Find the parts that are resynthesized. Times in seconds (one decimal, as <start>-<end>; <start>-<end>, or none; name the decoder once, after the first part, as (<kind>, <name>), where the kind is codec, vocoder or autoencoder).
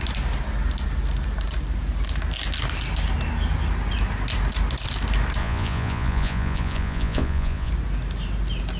5.4-7.7 (vocoder, Vocos)